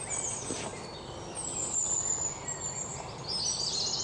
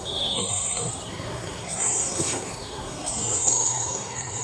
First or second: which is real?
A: first